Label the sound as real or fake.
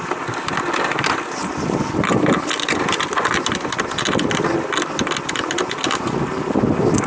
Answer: real